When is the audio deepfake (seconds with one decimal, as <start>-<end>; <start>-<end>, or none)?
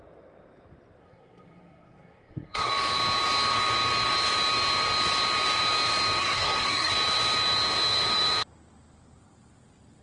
1.0-2.7; 6.2-6.9